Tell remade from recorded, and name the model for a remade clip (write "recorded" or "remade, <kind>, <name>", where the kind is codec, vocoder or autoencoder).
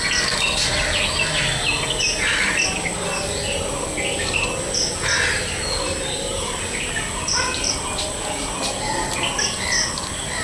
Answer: recorded